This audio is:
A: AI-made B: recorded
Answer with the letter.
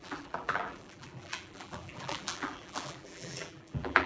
A